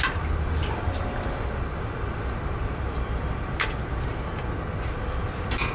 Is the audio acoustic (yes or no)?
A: yes